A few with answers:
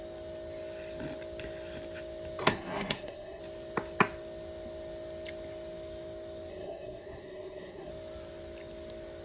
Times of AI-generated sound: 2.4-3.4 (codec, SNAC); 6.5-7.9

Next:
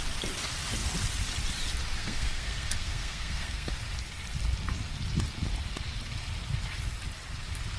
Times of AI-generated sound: 2.0-3.7 (codec, SNAC)

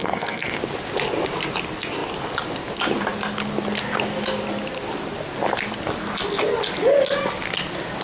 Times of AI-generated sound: 0.0-0.6 (codec, SNAC)

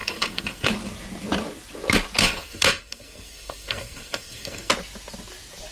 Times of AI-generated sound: 0.0-0.7 (codec, SNAC); 2.2-4.7

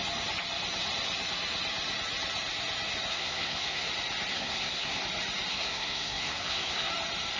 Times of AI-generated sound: 3.1-3.9 (codec, SNAC); 4.3-5.0; 5.5-6.9

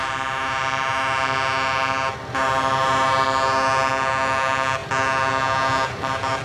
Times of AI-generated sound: none